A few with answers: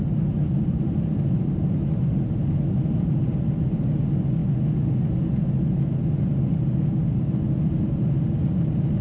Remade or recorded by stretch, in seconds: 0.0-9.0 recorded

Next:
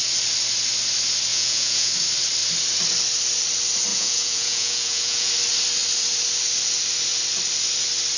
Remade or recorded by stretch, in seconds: 0.0-1.3 recorded; 1.3-1.9 remade; 1.9-3.9 recorded; 3.9-5.3 remade; 5.3-8.2 recorded

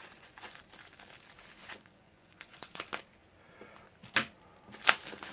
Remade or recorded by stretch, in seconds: 0.0-0.6 remade; 0.6-1.6 recorded; 1.6-2.8 remade; 2.8-5.3 recorded

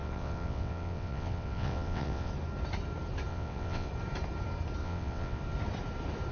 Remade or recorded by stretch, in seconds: 0.0-2.3 remade; 2.3-3.3 recorded; 3.3-3.9 remade; 3.9-4.8 recorded; 4.8-5.4 remade; 5.4-6.3 recorded

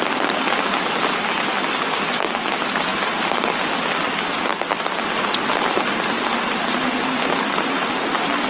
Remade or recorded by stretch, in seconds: 0.0-8.5 recorded